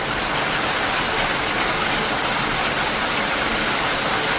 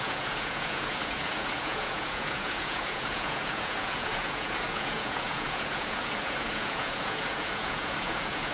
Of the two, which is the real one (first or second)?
first